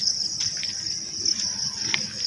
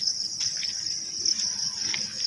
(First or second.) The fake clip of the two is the second